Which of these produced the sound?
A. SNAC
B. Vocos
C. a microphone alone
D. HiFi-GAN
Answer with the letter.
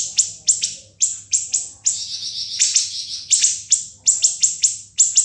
C